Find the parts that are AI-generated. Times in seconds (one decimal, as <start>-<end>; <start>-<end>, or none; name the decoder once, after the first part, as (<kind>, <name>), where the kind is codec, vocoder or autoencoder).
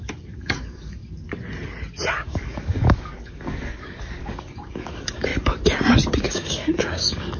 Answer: 0.0-1.0 (codec, DAC); 2.3-5.3; 6.3-7.4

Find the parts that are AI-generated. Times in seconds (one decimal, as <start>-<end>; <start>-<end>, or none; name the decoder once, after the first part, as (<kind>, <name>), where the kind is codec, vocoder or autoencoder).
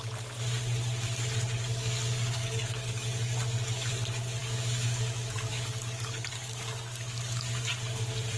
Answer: 1.6-3.9 (codec, DAC); 4.4-7.7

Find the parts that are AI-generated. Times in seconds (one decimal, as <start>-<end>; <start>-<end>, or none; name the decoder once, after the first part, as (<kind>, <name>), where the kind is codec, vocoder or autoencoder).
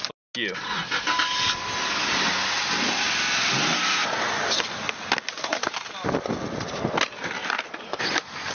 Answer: 7.4-8.0 (vocoder, BigVGAN v2)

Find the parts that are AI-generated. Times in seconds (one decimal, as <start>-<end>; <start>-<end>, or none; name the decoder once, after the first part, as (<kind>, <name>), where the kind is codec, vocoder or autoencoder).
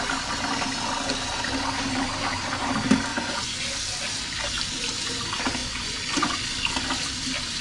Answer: 3.1-3.7 (vocoder, Vocos); 5.6-6.6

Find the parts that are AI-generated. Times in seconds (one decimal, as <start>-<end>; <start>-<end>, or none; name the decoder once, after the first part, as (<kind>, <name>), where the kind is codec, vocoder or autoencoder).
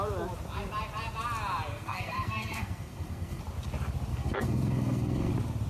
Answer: 1.7-3.4 (codec, SNAC); 4.1-5.3